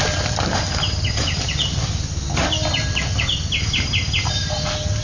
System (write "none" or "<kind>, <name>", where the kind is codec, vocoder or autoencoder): none